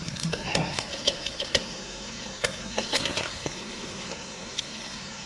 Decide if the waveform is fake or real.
fake